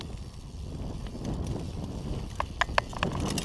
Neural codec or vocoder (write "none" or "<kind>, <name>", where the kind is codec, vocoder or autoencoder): none